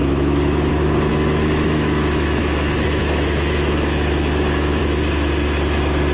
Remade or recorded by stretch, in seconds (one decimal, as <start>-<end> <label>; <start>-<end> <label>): 0.0-0.7 remade; 0.7-1.1 recorded; 1.1-4.8 remade; 4.8-6.1 recorded